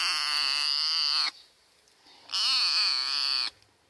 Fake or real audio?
real